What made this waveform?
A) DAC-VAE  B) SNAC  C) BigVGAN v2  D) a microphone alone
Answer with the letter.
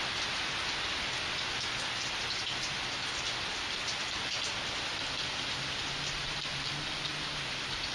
D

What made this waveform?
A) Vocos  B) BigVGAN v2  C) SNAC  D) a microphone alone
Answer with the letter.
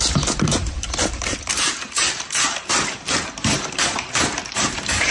B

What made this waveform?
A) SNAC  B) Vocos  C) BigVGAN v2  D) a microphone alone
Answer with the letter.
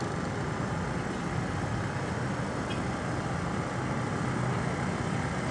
D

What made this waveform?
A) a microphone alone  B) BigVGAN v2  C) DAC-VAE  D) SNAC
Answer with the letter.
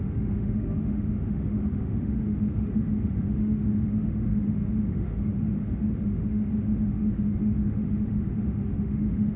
C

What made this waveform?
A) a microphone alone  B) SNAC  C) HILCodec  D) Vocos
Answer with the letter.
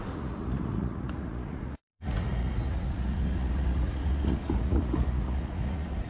D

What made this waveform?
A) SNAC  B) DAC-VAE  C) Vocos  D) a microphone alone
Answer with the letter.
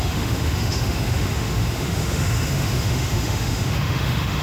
B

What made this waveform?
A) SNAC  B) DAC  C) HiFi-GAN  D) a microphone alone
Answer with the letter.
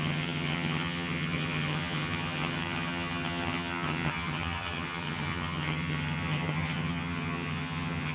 C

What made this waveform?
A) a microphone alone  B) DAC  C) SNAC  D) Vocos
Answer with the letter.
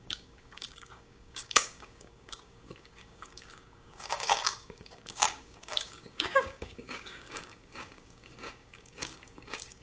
B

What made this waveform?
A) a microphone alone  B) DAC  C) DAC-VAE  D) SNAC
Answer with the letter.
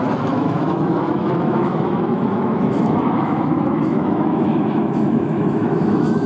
C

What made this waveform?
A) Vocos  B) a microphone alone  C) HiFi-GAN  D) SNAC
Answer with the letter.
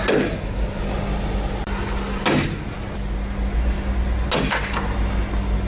B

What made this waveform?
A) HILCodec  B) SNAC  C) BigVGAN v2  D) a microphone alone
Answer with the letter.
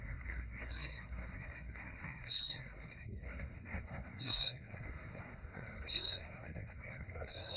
B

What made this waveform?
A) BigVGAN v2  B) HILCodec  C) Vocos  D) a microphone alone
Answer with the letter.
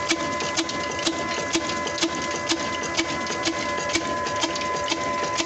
D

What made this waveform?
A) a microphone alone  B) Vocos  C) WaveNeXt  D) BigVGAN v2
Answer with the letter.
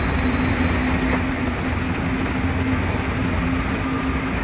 A